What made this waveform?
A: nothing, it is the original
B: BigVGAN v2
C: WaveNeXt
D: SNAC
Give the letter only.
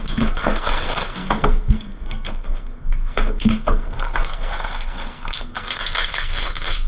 D